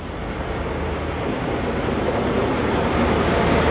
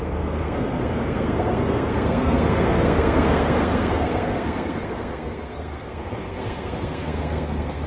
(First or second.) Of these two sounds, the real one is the first